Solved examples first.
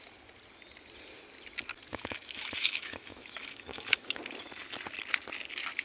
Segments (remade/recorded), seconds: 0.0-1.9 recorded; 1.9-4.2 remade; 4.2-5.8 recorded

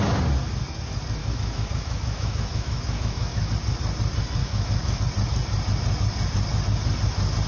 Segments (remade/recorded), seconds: 0.0-1.2 recorded; 1.2-3.5 remade; 3.5-4.4 recorded; 4.4-5.0 remade; 5.0-7.5 recorded